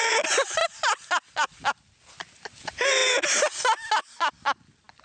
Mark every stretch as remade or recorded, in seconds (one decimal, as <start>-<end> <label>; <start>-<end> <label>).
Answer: 0.0-5.0 recorded